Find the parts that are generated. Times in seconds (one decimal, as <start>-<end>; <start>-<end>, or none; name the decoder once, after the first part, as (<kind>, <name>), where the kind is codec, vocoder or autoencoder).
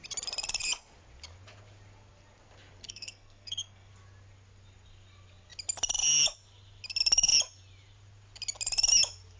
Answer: 2.8-3.9 (codec, SNAC)